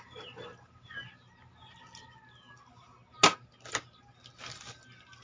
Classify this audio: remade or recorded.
recorded